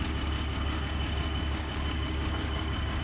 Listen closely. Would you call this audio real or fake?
fake